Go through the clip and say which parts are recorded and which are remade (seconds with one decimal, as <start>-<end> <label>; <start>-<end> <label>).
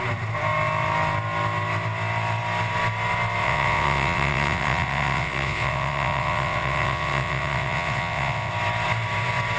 0.0-3.4 recorded; 3.4-8.5 remade; 8.5-9.6 recorded